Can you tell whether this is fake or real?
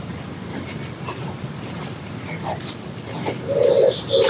real